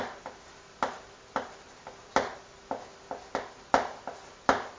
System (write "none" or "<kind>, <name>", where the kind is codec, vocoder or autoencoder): none